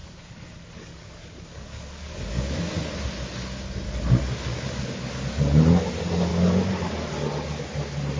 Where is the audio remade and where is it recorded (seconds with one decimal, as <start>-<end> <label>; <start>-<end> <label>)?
0.0-2.7 remade; 2.7-4.5 recorded; 4.5-5.1 remade; 5.1-8.2 recorded